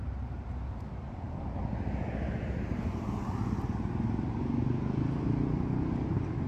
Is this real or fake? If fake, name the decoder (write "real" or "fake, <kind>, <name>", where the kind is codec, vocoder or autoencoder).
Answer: real